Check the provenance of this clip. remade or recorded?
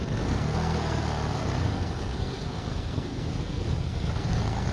remade